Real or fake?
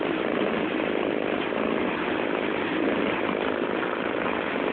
real